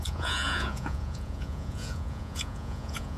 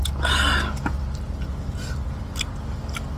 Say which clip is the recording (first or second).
second